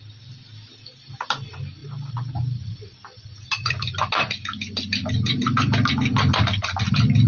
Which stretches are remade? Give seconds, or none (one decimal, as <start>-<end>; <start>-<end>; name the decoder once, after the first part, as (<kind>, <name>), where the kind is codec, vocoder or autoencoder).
none